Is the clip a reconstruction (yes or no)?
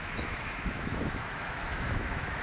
yes